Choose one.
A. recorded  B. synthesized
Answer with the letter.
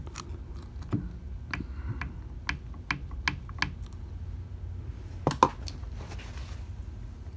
A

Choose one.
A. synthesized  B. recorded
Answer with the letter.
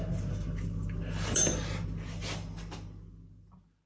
B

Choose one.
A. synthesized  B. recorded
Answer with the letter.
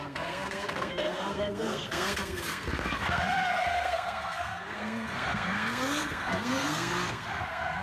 A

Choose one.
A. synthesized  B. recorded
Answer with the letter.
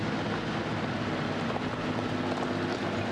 B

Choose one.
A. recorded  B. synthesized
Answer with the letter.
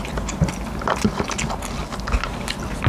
A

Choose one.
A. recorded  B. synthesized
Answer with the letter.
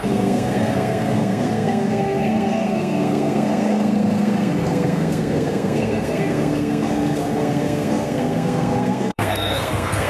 B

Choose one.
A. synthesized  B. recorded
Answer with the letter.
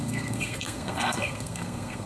A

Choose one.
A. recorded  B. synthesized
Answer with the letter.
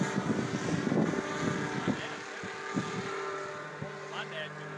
A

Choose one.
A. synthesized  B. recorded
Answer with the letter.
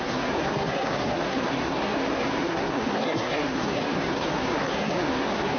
A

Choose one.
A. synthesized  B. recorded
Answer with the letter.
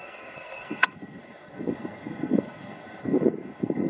A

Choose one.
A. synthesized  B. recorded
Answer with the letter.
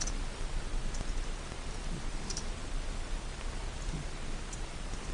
B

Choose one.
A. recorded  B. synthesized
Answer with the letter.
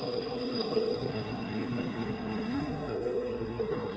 B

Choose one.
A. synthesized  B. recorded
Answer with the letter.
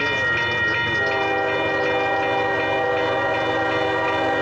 B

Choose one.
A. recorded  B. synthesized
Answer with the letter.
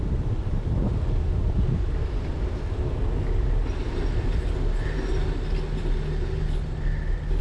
A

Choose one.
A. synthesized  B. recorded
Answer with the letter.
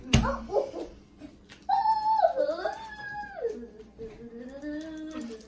B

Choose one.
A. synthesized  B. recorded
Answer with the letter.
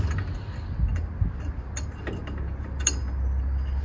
B